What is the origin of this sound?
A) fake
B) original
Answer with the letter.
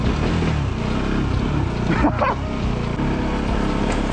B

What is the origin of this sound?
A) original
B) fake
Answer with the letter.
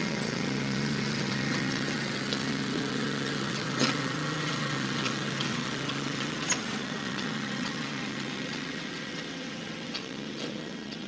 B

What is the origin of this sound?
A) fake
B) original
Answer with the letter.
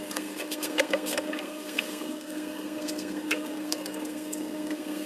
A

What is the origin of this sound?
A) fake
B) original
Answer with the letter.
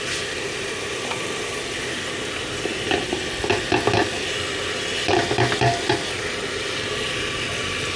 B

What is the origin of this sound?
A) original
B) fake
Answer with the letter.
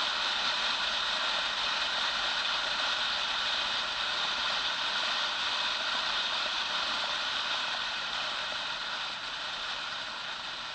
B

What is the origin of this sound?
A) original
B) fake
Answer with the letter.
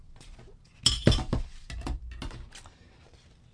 A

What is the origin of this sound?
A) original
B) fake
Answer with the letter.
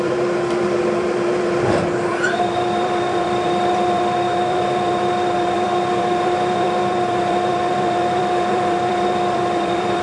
B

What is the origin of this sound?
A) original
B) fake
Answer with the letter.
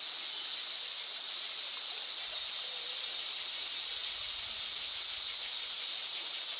A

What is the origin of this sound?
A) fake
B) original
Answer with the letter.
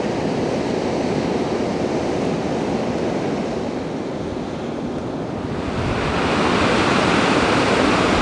B